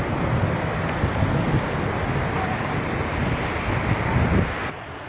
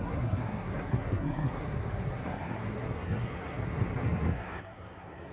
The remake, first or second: second